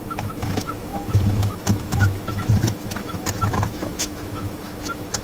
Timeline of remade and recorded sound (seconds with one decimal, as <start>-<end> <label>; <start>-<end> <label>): 0.0-5.2 remade